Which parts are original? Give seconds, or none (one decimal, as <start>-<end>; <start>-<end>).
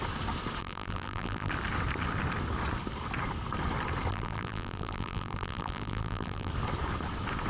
0.0-0.6; 1.5-4.1; 6.5-7.5